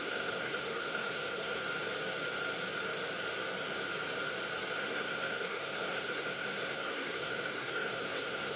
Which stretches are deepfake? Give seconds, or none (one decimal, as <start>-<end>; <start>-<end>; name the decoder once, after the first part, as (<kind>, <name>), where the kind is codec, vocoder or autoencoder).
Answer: 0.0-1.6 (codec, SNAC); 4.8-8.6